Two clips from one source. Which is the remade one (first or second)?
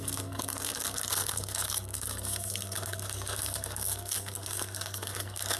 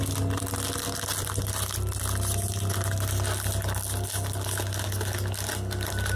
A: first